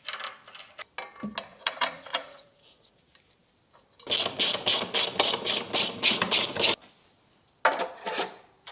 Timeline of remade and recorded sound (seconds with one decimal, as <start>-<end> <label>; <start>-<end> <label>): 0.0-1.5 recorded; 1.5-3.0 remade; 3.0-8.7 recorded